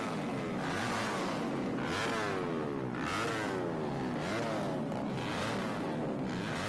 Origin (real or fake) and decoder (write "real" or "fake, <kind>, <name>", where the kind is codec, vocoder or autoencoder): real